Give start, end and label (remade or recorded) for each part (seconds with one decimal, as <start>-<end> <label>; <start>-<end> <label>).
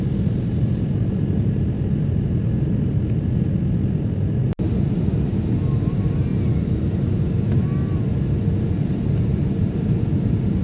0.0-10.6 recorded